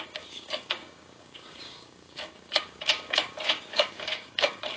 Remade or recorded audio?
remade